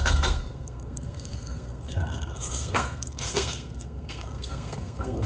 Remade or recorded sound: remade